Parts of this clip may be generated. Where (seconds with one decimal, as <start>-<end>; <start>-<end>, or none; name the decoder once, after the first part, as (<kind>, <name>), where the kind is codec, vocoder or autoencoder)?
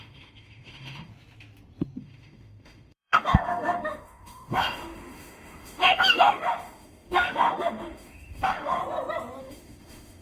0.0-1.1 (autoencoder, DAC-VAE); 2.0-8.8; 9.4-10.2